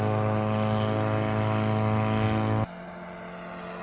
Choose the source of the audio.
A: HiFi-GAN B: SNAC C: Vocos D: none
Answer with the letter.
D